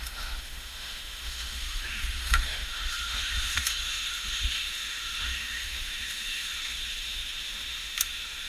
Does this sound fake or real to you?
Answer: fake